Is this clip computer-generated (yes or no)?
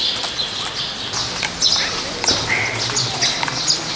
no